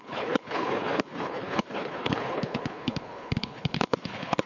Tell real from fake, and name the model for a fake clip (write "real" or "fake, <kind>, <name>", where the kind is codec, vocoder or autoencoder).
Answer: fake, codec, HILCodec